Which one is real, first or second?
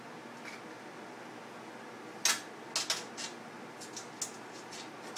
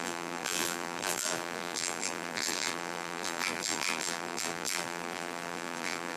first